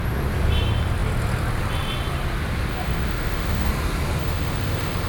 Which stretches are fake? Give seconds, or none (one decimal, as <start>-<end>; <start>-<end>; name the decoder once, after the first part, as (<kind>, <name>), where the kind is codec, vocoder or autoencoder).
2.7-3.7 (autoencoder, DAC-VAE); 4.2-5.1